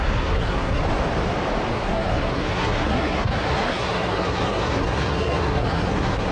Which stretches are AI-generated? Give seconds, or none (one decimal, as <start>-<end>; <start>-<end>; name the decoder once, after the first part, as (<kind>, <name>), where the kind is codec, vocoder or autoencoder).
0.0-0.8 (codec, SNAC); 1.7-6.3